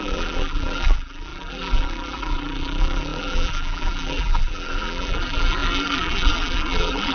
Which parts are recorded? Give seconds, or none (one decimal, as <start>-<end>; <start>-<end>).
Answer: none